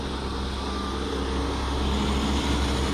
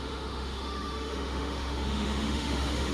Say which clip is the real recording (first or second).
first